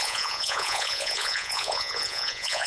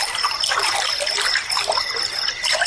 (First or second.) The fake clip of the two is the first